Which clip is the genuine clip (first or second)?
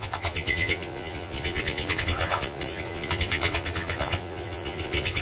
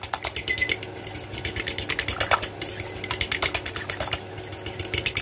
second